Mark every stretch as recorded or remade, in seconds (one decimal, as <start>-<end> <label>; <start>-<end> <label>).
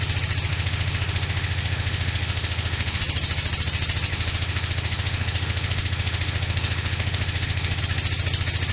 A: 0.0-0.5 recorded; 0.5-3.0 remade; 3.0-4.1 recorded; 4.1-7.8 remade; 7.8-8.7 recorded